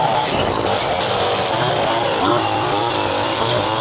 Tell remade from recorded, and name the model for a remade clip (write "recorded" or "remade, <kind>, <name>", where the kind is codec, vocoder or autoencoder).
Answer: recorded